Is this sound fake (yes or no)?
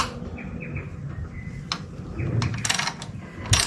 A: no